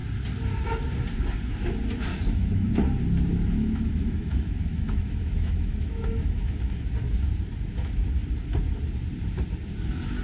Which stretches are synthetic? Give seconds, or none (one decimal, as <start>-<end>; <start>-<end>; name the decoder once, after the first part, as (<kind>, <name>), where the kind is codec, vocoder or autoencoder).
2.1-2.7 (autoencoder, DAC-VAE); 3.3-7.3